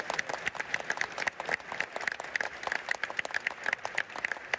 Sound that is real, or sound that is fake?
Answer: real